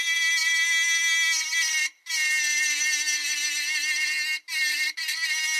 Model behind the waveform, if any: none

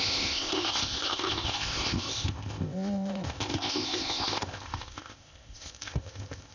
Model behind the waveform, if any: codec, ZipCodec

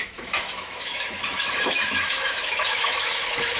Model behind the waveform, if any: autoencoder, DAC-VAE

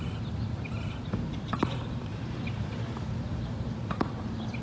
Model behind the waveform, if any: vocoder, BigVGAN v2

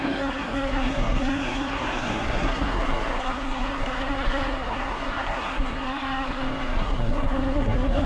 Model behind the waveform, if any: codec, SNAC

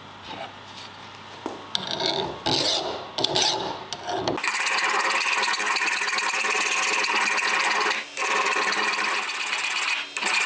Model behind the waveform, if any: none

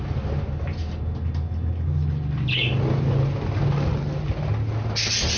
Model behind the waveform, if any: none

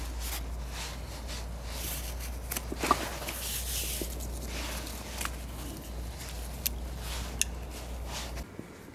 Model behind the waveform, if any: none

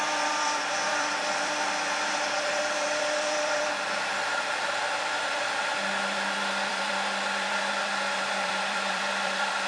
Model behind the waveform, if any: vocoder, BigVGAN v2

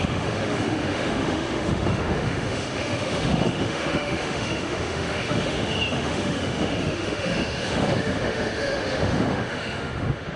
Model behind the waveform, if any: autoencoder, DAC-VAE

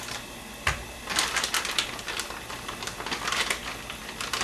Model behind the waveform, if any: none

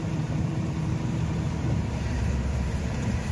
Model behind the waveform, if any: vocoder, BigVGAN v2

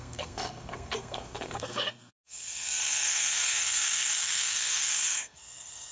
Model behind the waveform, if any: codec, SNAC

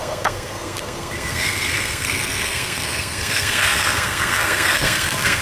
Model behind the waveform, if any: codec, SNAC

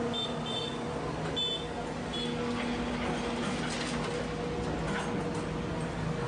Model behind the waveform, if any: none